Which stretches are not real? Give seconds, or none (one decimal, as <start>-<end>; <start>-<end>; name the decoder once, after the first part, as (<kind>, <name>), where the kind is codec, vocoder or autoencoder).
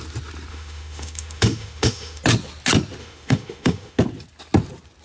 0.5-2.2 (autoencoder, DAC-VAE); 3.0-4.0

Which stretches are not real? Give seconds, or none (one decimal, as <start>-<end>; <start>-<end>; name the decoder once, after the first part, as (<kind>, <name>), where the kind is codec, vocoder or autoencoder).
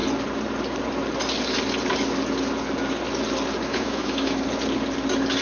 3.7-4.4 (autoencoder, DAC-VAE)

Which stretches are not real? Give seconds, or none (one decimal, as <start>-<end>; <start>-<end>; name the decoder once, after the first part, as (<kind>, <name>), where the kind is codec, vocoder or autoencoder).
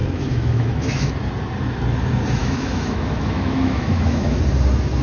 0.0-1.1 (autoencoder, DAC-VAE); 2.4-4.4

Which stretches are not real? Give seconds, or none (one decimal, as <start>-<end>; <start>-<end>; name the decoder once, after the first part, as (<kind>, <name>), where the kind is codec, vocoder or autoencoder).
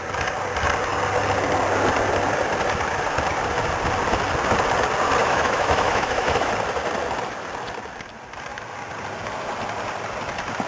5.2-6.5 (autoencoder, DAC-VAE)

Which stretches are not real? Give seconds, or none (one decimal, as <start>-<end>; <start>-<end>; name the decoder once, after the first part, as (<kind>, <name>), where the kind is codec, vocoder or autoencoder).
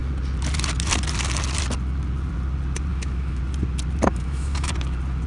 2.9-3.4 (autoencoder, DAC-VAE); 4.1-4.7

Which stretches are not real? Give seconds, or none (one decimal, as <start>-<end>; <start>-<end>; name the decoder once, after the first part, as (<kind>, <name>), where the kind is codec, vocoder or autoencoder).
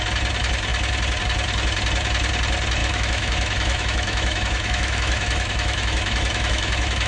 2.8-7.1 (autoencoder, DAC-VAE)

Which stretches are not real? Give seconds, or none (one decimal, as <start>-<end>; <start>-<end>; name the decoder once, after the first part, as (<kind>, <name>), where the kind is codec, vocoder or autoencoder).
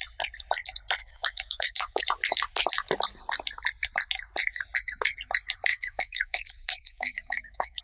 1.0-2.0 (autoencoder, DAC-VAE); 5.7-7.8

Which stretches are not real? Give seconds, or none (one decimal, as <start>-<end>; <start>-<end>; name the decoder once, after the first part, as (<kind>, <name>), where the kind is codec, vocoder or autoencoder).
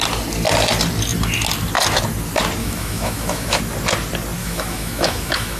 2.6-3.6 (autoencoder, DAC-VAE); 4.4-5.6